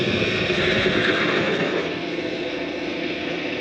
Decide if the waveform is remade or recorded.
remade